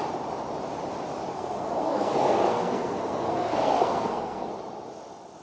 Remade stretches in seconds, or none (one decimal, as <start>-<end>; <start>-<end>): 1.3-4.5